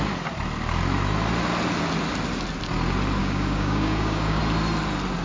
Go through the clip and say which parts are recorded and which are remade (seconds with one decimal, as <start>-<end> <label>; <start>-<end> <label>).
0.0-3.2 recorded; 3.2-4.4 remade; 4.4-5.2 recorded